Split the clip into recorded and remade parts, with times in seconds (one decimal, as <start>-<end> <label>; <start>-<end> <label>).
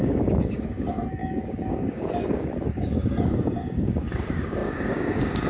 0.0-5.5 remade